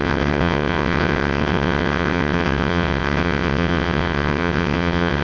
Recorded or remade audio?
remade